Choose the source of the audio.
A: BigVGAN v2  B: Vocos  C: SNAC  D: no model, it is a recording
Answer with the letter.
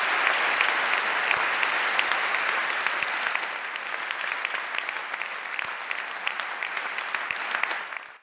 D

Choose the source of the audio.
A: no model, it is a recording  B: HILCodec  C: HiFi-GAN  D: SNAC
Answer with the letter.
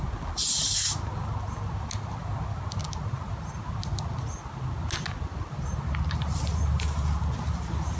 A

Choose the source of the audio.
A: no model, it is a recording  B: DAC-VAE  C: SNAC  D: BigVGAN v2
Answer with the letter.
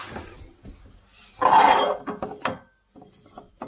A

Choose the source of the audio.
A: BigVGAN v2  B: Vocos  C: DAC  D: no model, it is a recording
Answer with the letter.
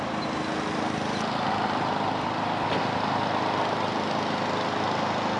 D